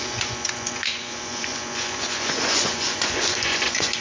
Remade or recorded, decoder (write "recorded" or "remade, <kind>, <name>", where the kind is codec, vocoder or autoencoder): remade, vocoder, Vocos